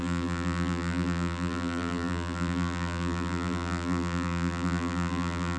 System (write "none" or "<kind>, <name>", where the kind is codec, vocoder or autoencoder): vocoder, BigVGAN v2